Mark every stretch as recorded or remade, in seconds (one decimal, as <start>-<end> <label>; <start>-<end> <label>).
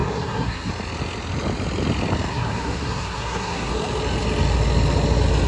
0.0-0.7 remade; 0.7-2.3 recorded; 2.3-3.7 remade; 3.7-5.5 recorded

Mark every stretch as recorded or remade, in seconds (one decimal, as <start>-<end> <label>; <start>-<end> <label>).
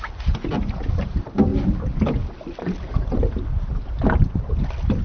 0.0-5.0 recorded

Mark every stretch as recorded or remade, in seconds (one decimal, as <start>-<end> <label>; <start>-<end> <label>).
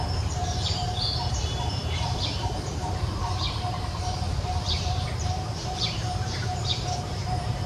0.0-7.7 remade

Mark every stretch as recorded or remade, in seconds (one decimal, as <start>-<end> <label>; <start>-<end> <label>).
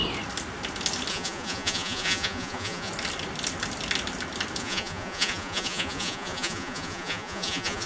0.0-1.1 recorded; 1.1-2.9 remade; 2.9-4.6 recorded; 4.6-7.9 remade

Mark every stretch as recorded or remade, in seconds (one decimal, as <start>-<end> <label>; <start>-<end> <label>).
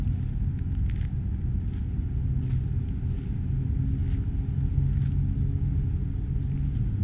0.0-7.0 recorded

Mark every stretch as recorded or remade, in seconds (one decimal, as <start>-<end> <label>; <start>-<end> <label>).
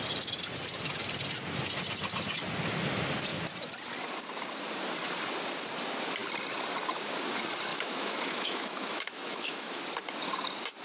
0.0-7.7 recorded; 7.7-9.8 remade; 9.8-10.8 recorded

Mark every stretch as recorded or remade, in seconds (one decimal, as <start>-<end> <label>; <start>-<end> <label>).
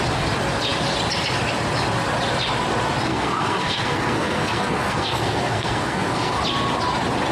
0.0-3.1 recorded; 3.1-6.4 remade; 6.4-7.3 recorded